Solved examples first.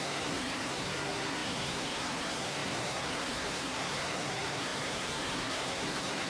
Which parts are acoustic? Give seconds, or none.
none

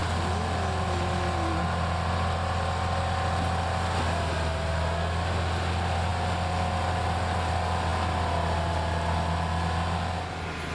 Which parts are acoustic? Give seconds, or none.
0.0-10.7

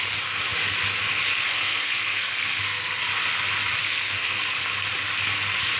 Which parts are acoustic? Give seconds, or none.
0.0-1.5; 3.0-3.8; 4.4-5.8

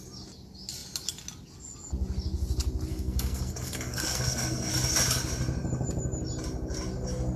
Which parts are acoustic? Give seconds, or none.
0.0-2.9; 4.7-7.4

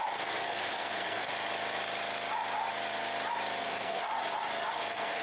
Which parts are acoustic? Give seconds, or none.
1.3-3.6; 4.1-4.7